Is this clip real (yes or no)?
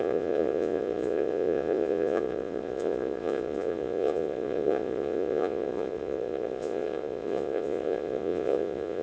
no